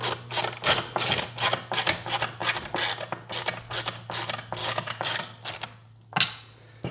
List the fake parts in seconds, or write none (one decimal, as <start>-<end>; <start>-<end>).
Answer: 4.6-5.2